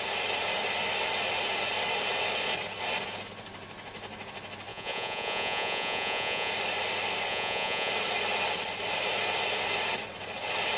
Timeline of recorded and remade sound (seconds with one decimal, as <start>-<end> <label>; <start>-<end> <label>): 0.0-4.7 recorded; 4.7-6.5 remade; 6.5-7.3 recorded; 7.3-7.9 remade; 7.9-10.8 recorded